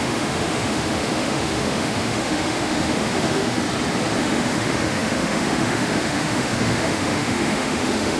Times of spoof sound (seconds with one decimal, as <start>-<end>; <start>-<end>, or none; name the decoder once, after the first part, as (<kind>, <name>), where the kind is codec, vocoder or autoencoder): 0.0-3.6 (autoencoder, DAC-VAE); 4.2-8.2